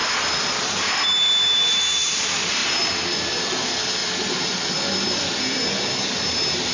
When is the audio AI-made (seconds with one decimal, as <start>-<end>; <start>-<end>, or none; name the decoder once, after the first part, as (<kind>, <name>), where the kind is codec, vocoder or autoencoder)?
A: 2.6-3.5 (vocoder, BigVGAN v2); 4.0-5.4